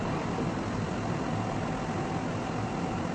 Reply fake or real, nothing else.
real